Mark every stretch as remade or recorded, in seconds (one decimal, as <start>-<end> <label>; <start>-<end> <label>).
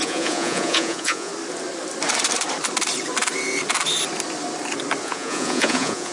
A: 0.0-1.3 remade; 1.3-5.0 recorded; 5.0-6.1 remade